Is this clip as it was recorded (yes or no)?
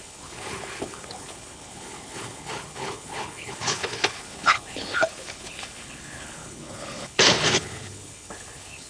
no